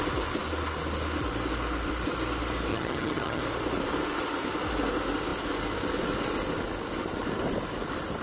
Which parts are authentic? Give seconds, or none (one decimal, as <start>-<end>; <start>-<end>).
0.0-2.7; 3.4-8.2